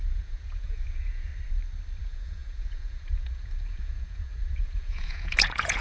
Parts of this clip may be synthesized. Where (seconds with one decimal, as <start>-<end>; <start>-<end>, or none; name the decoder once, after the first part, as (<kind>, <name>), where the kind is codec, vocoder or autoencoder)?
0.0-1.3 (vocoder, Vocos); 2.0-5.8